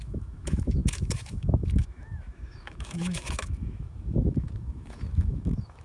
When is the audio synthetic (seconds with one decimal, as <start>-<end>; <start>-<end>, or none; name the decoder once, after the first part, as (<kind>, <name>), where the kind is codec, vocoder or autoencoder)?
0.0-5.8 (autoencoder, DAC-VAE)